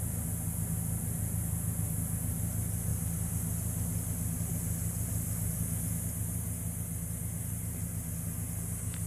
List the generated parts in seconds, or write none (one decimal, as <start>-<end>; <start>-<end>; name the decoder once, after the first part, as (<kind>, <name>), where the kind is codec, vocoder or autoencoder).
none

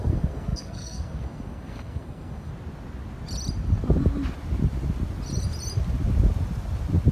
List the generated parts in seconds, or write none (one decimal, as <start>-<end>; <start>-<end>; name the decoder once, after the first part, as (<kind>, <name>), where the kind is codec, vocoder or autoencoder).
0.0-2.5 (codec, SNAC)

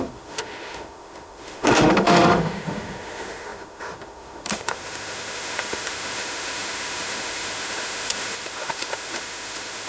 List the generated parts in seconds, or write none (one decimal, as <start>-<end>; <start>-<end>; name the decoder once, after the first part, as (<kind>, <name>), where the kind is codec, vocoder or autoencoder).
0.0-9.9 (autoencoder, DAC-VAE)